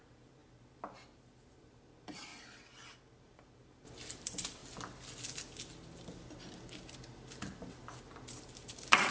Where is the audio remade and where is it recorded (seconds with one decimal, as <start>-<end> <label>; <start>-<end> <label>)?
0.0-0.4 remade; 0.4-1.5 recorded; 1.5-2.3 remade; 2.3-3.2 recorded; 3.2-4.6 remade; 4.6-8.5 recorded; 8.5-9.1 remade